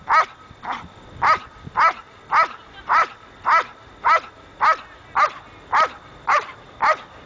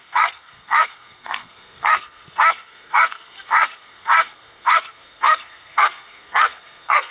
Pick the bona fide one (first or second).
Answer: first